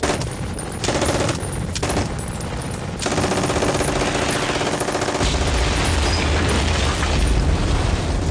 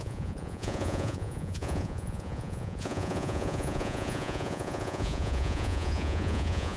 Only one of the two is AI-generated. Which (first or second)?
second